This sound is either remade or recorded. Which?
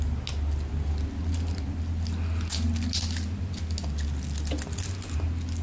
recorded